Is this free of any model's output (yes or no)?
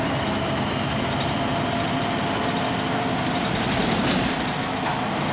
yes